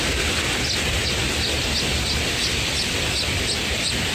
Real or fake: real